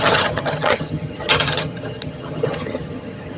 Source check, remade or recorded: remade